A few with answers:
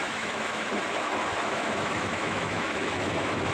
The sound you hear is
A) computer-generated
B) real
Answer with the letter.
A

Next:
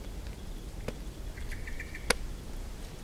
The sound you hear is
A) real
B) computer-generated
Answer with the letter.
A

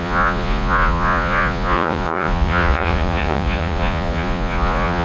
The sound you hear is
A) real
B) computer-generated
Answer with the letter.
B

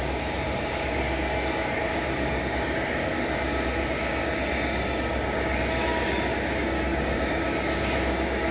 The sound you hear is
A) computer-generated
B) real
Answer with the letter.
A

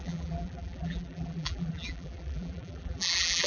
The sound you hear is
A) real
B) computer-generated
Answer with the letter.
B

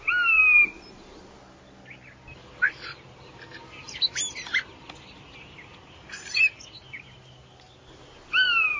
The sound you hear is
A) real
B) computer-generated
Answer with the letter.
A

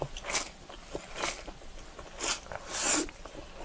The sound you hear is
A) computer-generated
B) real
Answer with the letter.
A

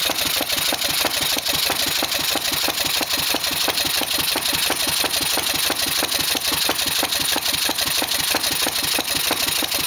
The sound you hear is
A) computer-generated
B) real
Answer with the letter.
B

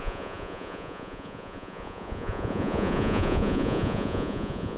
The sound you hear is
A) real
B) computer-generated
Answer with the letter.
B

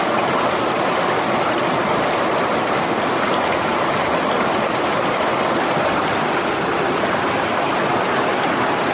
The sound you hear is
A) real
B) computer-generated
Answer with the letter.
A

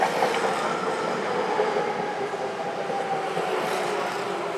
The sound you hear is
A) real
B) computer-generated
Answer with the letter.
A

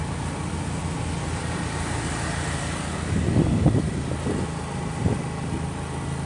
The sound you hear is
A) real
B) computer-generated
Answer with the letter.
A